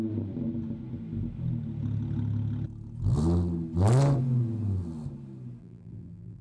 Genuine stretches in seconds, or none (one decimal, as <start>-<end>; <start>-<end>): 0.0-5.6